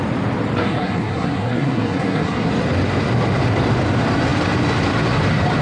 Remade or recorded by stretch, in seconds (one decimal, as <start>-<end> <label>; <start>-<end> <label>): 0.0-0.6 recorded; 0.6-2.5 remade; 2.5-5.6 recorded